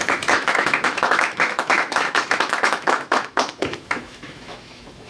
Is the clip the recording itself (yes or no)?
no